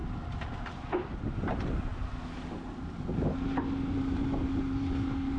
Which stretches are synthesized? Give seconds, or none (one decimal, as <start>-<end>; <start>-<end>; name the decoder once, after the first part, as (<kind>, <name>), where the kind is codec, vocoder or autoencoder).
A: none